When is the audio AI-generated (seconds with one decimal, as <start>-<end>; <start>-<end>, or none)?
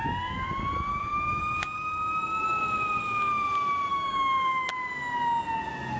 0.9-1.4; 3.9-4.7